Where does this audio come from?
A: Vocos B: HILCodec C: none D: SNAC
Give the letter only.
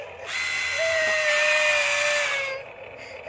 C